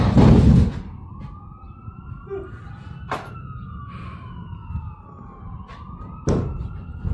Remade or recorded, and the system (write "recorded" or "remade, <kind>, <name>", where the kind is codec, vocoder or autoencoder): recorded